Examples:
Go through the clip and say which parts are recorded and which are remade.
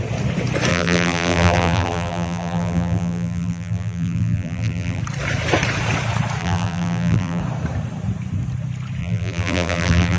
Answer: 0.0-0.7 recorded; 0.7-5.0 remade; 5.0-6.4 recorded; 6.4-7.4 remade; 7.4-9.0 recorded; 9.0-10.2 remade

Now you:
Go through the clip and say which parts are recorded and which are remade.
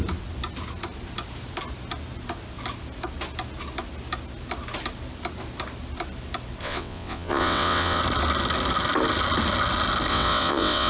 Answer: 0.0-6.6 recorded; 6.6-8.0 remade; 8.0-10.1 recorded; 10.1-10.9 remade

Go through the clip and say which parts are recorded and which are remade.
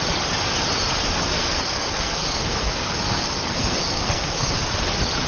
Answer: 0.0-1.3 recorded; 1.3-4.5 remade; 4.5-5.3 recorded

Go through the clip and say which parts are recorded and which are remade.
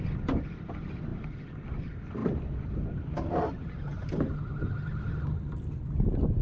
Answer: 0.0-6.4 recorded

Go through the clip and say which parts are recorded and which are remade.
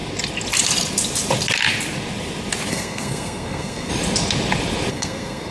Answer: 0.0-2.7 recorded; 2.7-3.9 remade; 3.9-4.9 recorded; 4.9-5.5 remade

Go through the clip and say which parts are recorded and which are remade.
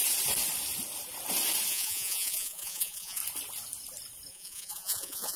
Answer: 0.0-1.7 recorded; 1.7-3.2 remade; 3.2-4.3 recorded; 4.3-5.4 remade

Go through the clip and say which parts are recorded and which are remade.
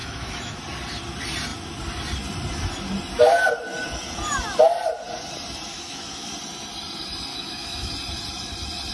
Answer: 0.0-0.6 remade; 0.6-5.7 recorded; 5.7-6.3 remade; 6.3-7.3 recorded; 7.3-7.9 remade; 7.9-8.9 recorded